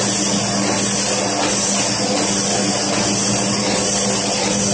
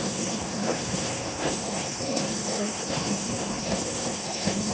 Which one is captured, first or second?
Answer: first